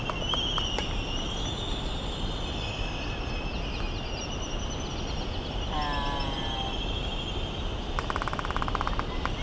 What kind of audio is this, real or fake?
real